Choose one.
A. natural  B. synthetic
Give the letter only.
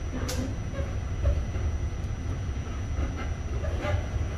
A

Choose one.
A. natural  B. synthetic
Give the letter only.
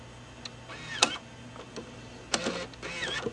A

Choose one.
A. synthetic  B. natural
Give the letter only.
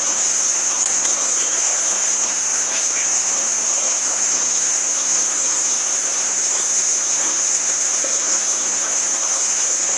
A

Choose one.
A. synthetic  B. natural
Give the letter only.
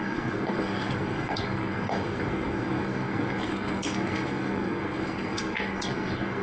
A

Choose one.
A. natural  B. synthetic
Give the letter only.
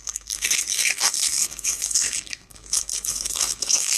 B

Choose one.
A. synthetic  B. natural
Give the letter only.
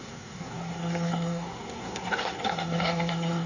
A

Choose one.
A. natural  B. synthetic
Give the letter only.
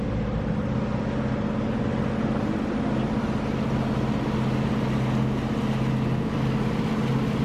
A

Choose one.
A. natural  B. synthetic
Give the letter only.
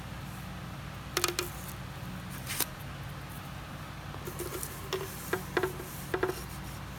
A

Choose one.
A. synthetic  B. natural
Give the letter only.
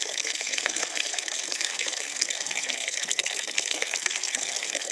A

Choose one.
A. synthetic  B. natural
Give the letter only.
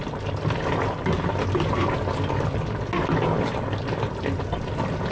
B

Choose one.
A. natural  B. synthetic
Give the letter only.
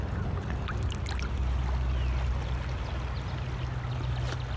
A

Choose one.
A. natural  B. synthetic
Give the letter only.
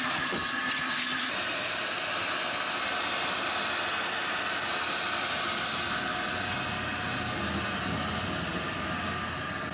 A